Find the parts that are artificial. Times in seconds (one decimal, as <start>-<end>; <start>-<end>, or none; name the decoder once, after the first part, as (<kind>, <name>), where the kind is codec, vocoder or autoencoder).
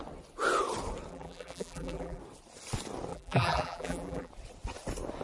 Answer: 1.1-2.2 (vocoder, BigVGAN v2); 3.1-4.3